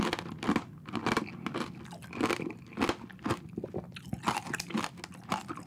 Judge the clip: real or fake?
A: real